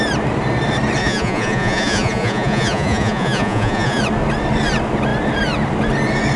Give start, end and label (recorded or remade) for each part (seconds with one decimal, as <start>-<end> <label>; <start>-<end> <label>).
0.0-1.0 recorded; 1.0-4.0 remade; 4.0-6.4 recorded